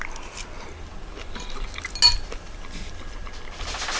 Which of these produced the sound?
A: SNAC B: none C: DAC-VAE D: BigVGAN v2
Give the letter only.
B